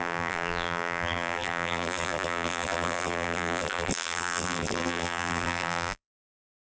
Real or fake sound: fake